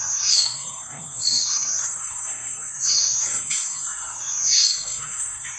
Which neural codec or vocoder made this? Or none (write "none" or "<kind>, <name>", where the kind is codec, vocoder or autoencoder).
codec, SNAC